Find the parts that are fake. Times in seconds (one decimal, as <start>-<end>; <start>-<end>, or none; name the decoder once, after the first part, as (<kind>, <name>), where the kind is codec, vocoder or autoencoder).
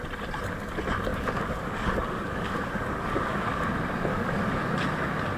1.1-3.6 (codec, DAC); 4.1-4.6